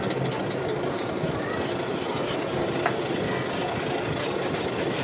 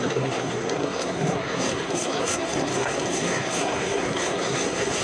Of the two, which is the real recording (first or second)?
first